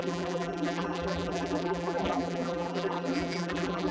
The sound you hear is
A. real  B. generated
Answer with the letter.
B